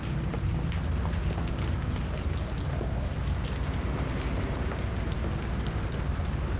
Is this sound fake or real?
real